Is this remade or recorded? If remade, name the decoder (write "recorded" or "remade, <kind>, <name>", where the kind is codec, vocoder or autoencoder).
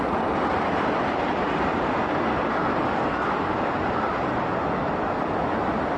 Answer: recorded